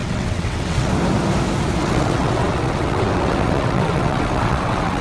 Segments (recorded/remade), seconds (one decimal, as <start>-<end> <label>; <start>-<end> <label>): 0.0-0.9 remade; 0.9-1.8 recorded; 1.8-5.0 remade